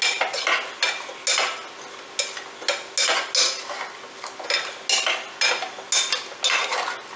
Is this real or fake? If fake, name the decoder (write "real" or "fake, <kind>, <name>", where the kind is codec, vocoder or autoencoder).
real